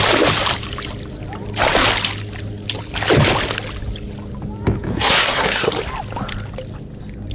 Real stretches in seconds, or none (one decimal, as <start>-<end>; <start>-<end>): 0.0-4.9; 5.7-7.3